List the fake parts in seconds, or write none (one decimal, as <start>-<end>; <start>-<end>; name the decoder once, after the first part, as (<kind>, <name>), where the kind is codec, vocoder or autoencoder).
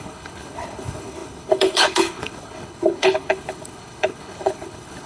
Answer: 0.0-5.1 (codec, HILCodec)